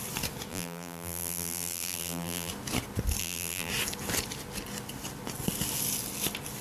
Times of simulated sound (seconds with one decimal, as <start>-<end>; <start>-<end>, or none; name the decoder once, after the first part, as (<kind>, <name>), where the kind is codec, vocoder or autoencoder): 0.5-2.5 (vocoder, BigVGAN v2); 3.2-3.7